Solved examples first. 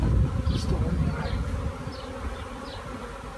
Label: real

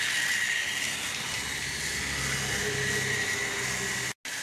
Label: real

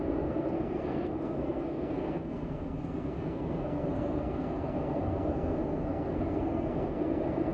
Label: fake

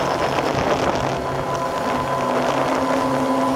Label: real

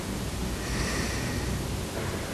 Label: real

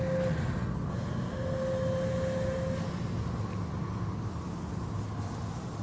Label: real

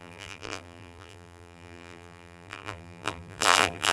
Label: fake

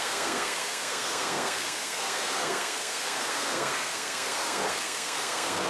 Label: fake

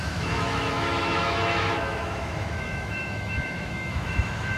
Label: fake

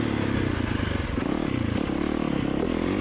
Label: real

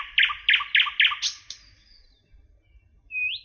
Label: real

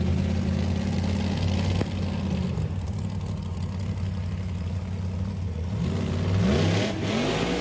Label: real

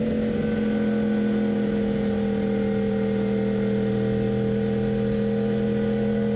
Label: real